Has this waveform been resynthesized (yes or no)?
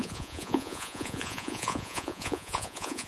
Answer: yes